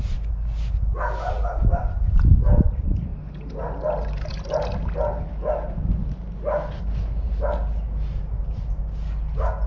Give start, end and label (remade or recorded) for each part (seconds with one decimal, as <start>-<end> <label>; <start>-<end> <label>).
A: 0.0-9.7 recorded